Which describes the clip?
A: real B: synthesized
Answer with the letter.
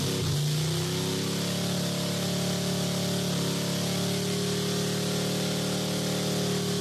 A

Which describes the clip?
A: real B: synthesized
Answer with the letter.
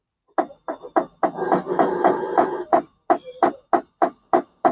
A